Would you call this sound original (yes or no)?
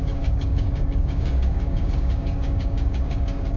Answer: no